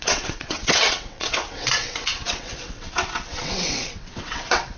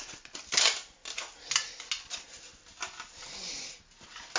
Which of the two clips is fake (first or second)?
first